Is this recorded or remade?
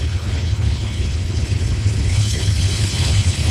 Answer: remade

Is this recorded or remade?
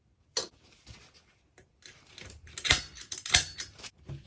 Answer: recorded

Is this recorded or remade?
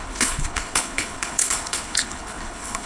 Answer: remade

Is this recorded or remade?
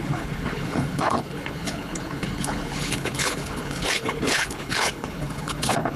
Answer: remade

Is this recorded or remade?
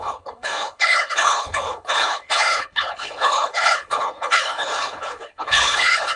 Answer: remade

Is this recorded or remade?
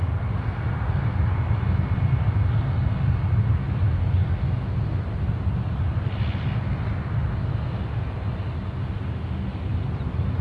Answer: recorded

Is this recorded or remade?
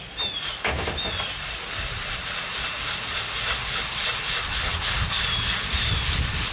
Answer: recorded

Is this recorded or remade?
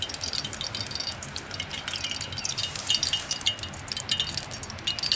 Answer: recorded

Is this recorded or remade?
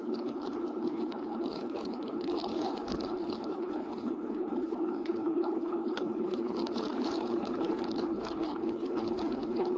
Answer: remade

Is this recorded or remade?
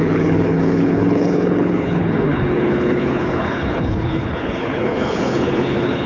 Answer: remade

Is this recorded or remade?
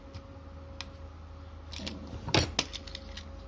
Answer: recorded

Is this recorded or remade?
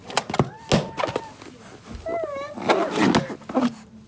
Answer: recorded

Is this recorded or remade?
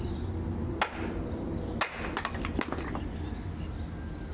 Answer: recorded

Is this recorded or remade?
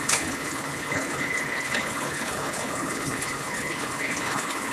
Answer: remade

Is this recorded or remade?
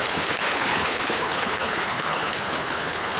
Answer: remade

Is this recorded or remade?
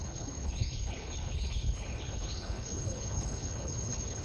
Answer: remade